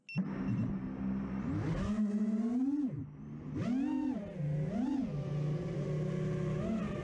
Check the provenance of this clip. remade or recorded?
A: recorded